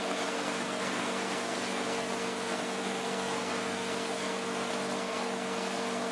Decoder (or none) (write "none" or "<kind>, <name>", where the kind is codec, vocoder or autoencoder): codec, SNAC